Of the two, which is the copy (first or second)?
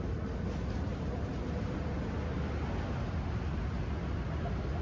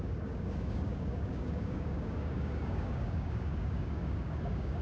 second